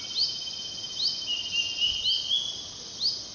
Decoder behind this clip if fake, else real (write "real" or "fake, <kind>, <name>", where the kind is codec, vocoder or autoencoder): real